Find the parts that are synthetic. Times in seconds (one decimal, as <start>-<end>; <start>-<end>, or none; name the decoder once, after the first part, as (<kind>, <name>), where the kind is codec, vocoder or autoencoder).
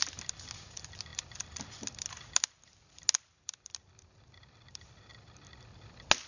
3.3-5.1 (vocoder, BigVGAN v2)